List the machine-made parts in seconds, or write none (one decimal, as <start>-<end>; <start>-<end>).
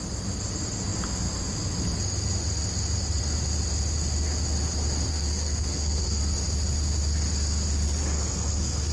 5.1-6.2; 8.1-8.9